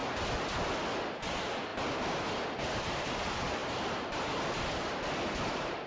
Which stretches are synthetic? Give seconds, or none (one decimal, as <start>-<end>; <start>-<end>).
1.1-1.7; 2.8-3.6; 5.3-5.9